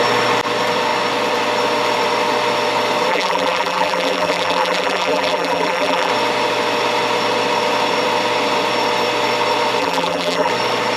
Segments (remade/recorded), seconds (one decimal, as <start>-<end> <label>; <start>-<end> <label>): 0.0-3.1 recorded; 3.1-6.1 remade; 6.1-9.8 recorded; 9.8-10.5 remade; 10.5-11.0 recorded